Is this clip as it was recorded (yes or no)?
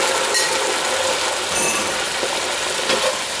yes